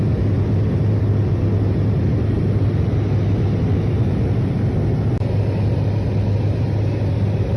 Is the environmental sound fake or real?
real